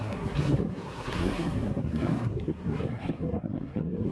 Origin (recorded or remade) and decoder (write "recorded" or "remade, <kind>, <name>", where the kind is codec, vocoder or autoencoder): remade, codec, SNAC